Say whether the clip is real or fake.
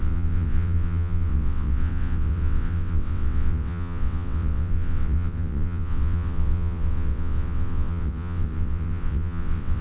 fake